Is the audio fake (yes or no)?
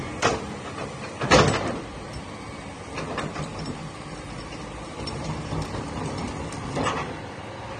yes